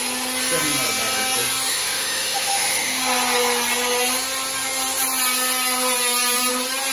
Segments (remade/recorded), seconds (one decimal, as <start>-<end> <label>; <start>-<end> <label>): 0.0-1.7 recorded; 1.7-3.0 remade; 3.0-6.9 recorded